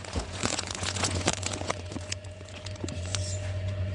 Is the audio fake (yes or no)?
yes